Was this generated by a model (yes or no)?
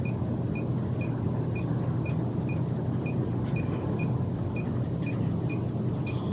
no